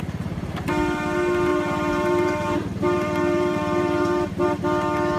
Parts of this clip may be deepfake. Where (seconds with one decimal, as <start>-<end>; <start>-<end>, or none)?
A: 1.5-4.6